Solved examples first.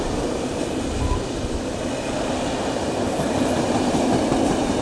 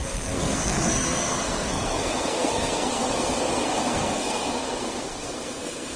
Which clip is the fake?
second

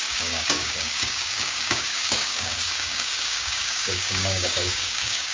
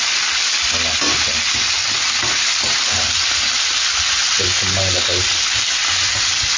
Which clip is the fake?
first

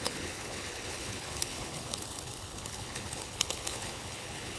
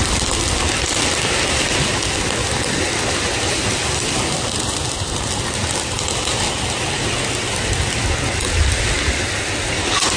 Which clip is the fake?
first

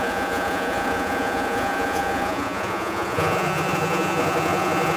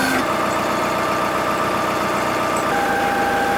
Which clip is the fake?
first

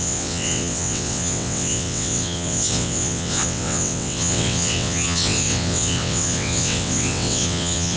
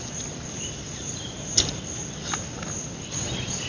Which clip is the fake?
first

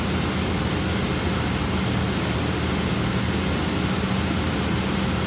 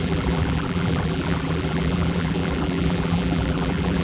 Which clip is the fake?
second